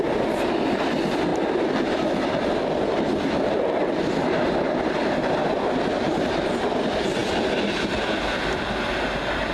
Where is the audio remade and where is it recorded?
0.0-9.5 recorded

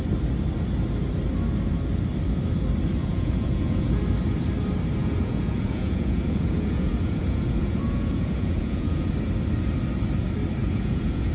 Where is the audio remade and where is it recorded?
0.0-3.0 recorded; 3.0-4.0 remade; 4.0-5.0 recorded; 5.0-9.1 remade; 9.1-10.6 recorded; 10.6-11.3 remade

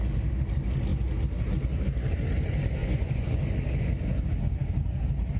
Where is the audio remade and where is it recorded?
0.0-2.8 recorded; 2.8-3.4 remade; 3.4-5.4 recorded